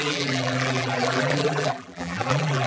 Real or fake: fake